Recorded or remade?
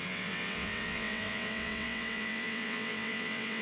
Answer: remade